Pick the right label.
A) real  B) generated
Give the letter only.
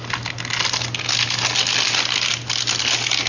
A